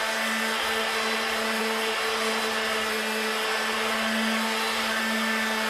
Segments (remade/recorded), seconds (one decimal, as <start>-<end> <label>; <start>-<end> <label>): 0.0-5.7 recorded